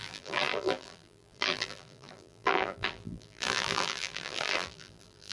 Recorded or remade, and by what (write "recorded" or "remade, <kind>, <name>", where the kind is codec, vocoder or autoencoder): remade, vocoder, BigVGAN v2